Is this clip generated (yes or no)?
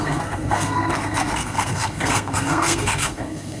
yes